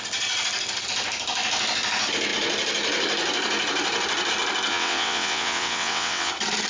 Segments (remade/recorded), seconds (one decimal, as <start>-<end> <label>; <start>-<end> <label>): 0.0-4.7 recorded; 4.7-6.3 remade; 6.3-6.7 recorded